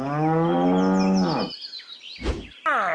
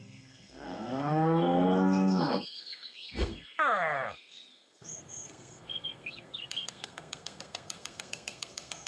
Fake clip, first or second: second